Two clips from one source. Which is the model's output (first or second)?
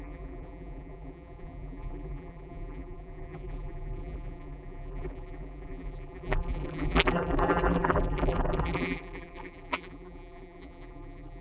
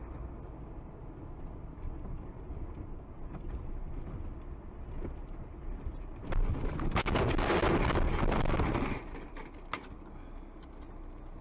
first